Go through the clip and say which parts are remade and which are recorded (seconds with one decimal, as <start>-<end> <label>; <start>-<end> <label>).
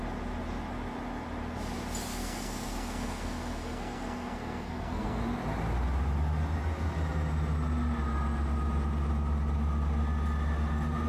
0.0-2.1 recorded; 2.1-5.2 remade; 5.2-11.1 recorded